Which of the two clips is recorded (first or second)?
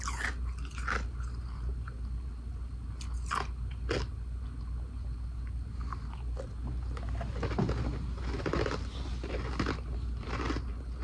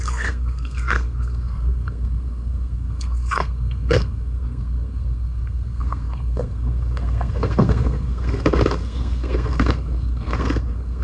first